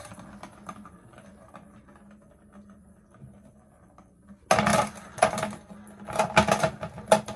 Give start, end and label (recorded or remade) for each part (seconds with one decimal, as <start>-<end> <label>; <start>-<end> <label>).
0.0-7.4 recorded